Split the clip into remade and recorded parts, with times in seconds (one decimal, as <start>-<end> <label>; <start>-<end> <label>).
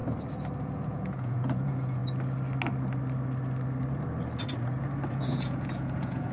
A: 0.0-0.6 recorded; 0.6-2.0 remade; 2.0-5.1 recorded; 5.1-6.3 remade